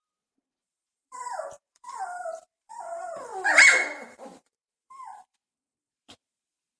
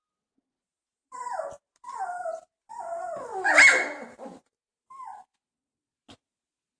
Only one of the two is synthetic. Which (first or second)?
first